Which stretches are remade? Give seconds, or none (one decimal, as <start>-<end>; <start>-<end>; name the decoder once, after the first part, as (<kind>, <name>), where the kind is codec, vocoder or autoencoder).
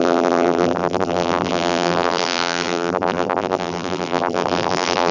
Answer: 0.0-5.1 (vocoder, BigVGAN v2)